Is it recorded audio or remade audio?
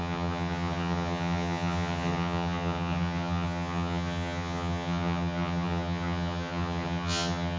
remade